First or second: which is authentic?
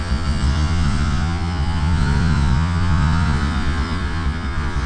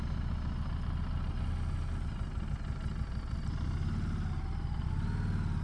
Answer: second